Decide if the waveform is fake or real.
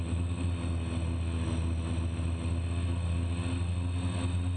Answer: real